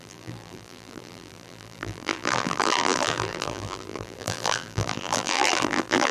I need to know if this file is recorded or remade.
remade